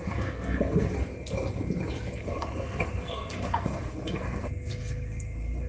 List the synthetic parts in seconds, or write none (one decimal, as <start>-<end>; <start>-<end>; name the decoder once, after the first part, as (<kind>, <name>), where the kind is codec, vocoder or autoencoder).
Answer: 0.0-0.9 (codec, SNAC); 2.2-5.7